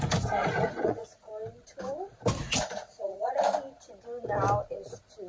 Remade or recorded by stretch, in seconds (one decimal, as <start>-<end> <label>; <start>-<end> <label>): 0.0-0.4 recorded; 0.4-1.3 remade; 1.3-2.4 recorded; 2.4-3.3 remade; 3.3-5.3 recorded

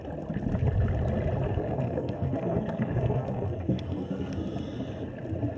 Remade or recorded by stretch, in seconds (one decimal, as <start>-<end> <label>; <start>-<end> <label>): 0.0-1.5 recorded; 1.5-4.3 remade; 4.3-5.6 recorded

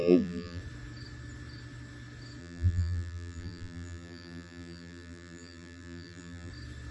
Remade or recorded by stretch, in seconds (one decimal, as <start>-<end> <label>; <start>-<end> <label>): 0.0-0.6 remade; 0.6-2.4 recorded; 2.4-6.5 remade; 6.5-6.9 recorded

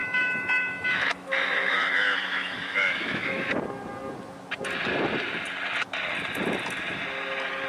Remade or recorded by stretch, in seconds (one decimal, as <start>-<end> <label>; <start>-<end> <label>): 0.0-3.5 remade; 3.5-7.7 recorded

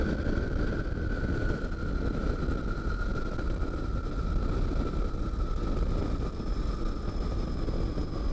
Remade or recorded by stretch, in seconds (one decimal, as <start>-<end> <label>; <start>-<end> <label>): 0.0-8.3 recorded

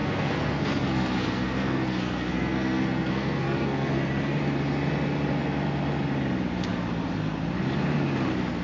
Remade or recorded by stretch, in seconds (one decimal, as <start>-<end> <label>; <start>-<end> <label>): 0.0-4.4 remade; 4.4-8.6 recorded